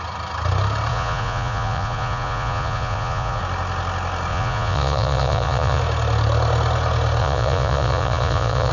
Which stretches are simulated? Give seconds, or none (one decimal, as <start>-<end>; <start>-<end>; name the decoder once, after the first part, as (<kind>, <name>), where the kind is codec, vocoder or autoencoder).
0.9-3.4 (vocoder, Vocos); 4.3-5.8; 7.2-8.7

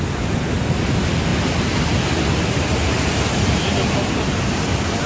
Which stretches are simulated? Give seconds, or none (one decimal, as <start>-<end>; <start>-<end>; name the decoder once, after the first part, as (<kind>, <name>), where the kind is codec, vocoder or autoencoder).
none

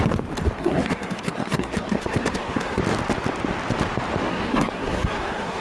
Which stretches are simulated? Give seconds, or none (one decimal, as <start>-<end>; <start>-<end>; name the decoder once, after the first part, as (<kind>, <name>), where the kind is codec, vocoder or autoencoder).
0.6-2.8 (codec, SNAC); 4.3-5.6

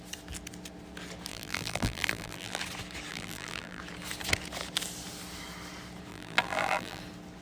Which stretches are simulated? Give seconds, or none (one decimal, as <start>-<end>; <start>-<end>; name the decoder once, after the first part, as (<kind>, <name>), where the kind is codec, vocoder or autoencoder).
1.3-2.6 (vocoder, BigVGAN v2); 3.1-3.8; 6.1-7.0

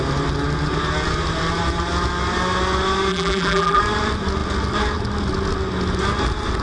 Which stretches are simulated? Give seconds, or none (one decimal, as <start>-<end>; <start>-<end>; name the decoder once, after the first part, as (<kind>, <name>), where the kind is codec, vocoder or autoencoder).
3.1-3.8 (vocoder, BigVGAN v2)

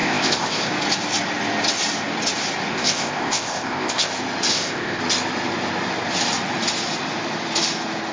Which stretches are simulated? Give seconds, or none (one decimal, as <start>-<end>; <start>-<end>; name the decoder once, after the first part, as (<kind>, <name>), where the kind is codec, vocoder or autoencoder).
0.0-0.7 (codec, ZipCodec); 2.7-4.1; 4.5-5.0

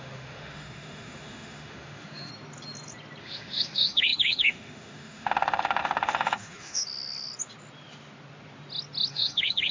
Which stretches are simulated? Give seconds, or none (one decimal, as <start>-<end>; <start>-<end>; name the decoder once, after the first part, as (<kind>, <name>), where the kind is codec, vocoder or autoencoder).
0.0-2.3 (autoencoder, DAC-VAE); 3.2-6.8; 9.1-9.7

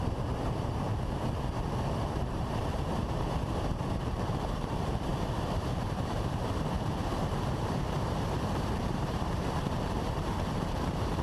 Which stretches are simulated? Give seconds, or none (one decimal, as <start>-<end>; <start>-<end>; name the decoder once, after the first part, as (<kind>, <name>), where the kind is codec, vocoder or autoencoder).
0.0-0.9 (vocoder, BigVGAN v2); 2.1-11.2